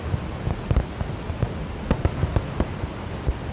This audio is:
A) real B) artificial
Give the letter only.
A